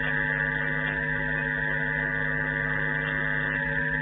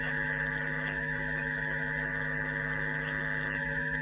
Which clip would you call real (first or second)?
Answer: first